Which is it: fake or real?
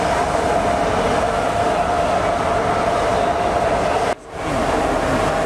real